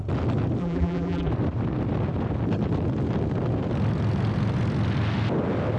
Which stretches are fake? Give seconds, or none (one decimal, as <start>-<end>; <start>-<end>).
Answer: 0.6-1.3

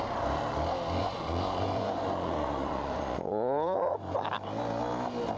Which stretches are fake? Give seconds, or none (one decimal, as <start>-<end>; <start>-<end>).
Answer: 1.0-4.2

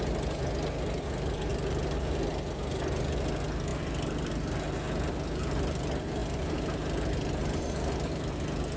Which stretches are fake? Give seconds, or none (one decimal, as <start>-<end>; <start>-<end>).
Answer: 6.2-7.7